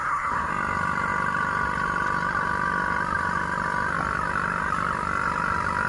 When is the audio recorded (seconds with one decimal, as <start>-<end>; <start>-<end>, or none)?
0.5-5.9